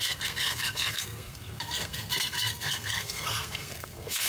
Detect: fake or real fake